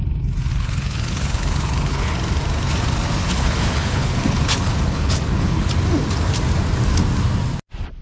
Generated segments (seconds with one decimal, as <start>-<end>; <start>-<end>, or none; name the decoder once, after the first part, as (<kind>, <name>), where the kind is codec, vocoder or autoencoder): 0.5-2.1 (codec, HILCodec); 3.2-5.7